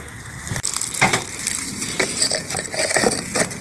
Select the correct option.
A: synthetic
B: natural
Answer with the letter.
B